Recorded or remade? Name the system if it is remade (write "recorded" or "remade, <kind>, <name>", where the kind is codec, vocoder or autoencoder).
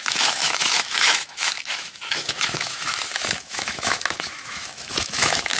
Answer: remade, autoencoder, DAC-VAE